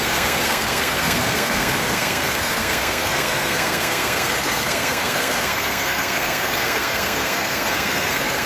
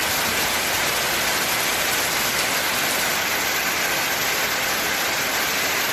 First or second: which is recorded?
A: second